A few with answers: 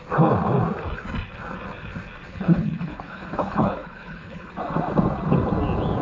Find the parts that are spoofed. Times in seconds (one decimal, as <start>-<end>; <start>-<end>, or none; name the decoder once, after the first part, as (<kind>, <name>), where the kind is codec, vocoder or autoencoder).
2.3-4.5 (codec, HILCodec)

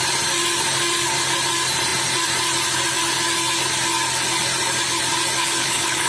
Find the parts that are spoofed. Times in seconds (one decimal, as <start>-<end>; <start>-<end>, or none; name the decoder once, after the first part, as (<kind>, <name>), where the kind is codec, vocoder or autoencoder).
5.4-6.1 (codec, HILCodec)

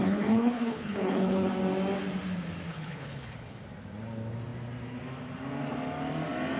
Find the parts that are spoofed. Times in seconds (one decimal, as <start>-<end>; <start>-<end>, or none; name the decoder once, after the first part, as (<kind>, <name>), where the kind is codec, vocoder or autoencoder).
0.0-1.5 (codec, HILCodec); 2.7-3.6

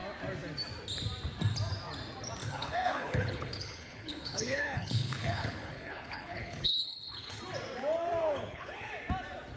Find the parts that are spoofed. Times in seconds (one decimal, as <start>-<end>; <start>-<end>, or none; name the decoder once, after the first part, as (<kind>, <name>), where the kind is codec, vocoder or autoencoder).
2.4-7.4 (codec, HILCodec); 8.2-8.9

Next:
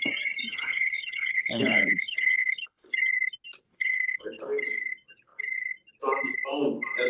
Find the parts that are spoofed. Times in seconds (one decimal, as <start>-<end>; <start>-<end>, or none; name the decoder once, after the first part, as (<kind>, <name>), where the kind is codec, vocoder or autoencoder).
0.5-2.9 (codec, HILCodec); 3.7-4.4

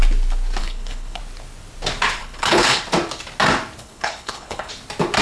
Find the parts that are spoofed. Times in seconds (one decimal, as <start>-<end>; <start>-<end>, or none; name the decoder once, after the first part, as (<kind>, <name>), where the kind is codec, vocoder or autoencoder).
0.6-1.2 (codec, HILCodec); 2.2-2.8; 3.8-4.7

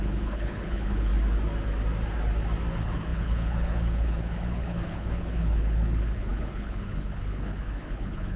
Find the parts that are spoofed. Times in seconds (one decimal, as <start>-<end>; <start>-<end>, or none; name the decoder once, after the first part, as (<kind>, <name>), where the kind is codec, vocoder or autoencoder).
0.0-1.1 (codec, HILCodec); 2.7-8.4